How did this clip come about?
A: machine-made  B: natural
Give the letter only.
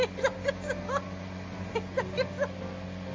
B